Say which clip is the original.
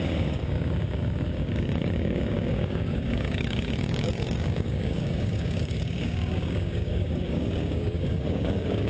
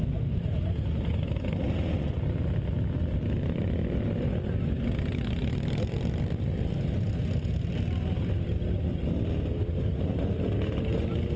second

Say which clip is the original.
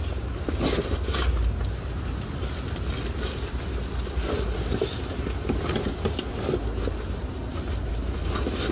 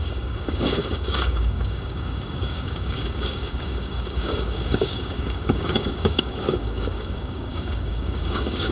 first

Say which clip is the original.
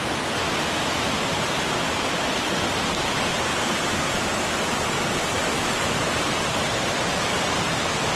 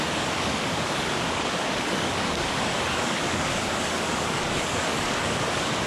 first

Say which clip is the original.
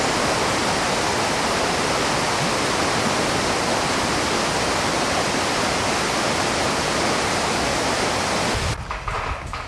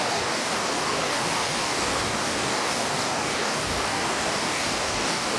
first